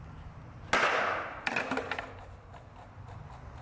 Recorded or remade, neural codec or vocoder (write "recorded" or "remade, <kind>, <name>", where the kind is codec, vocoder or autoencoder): recorded